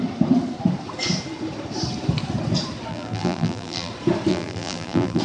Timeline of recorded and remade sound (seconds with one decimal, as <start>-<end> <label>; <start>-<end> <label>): 0.0-2.9 recorded; 2.9-3.9 remade; 3.9-4.3 recorded; 4.3-5.2 remade